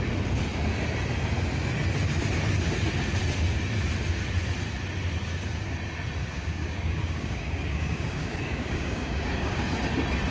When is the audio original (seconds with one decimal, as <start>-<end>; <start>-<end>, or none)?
0.0-6.2; 9.8-10.3